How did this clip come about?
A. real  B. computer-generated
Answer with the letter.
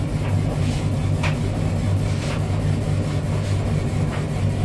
A